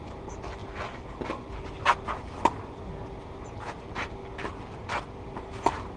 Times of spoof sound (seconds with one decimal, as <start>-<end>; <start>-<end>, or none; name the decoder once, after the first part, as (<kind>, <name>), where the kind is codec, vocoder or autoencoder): none